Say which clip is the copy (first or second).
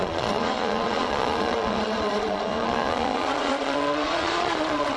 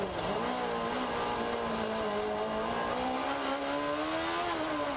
first